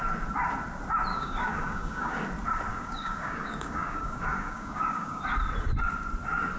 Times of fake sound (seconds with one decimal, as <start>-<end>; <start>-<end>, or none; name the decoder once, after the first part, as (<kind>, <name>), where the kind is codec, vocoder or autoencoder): 1.1-2.2 (codec, DAC); 2.7-5.2